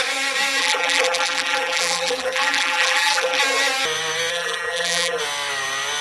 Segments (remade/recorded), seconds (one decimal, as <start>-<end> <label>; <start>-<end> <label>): 0.0-0.6 recorded; 0.6-3.4 remade; 3.4-4.3 recorded; 4.3-5.2 remade; 5.2-6.0 recorded